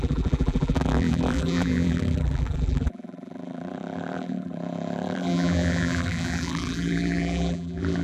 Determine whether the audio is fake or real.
fake